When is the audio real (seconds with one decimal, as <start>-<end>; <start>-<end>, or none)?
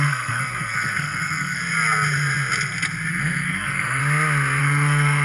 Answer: 1.6-3.1; 4.0-4.6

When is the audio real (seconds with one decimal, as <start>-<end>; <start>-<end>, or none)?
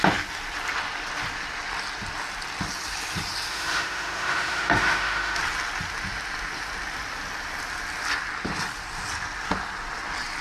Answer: 0.0-3.5; 5.4-10.4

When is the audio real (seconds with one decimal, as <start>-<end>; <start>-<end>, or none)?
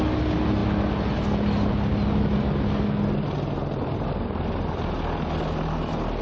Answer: 0.0-6.2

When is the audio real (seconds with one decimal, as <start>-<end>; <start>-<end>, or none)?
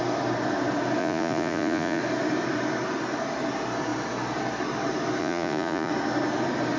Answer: 0.0-1.0; 2.0-5.2; 5.9-6.8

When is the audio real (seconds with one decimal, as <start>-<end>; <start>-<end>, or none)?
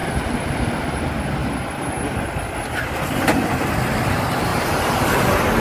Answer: 0.0-4.5